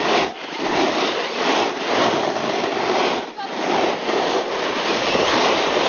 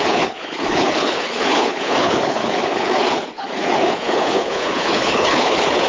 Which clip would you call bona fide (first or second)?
first